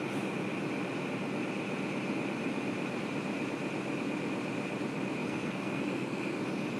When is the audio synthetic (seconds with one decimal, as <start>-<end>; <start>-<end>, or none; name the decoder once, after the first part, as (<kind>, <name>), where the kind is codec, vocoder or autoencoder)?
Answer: 5.2-6.2 (codec, SNAC)